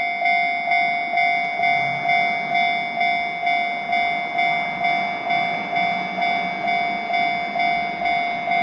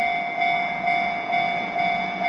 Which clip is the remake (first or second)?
second